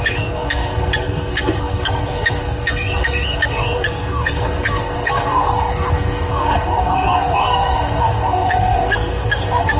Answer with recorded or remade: remade